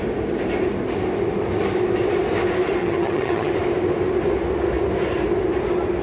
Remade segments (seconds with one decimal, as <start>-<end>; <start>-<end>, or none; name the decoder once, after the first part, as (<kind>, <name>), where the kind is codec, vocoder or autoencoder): 2.8-3.5 (vocoder, HiFi-GAN)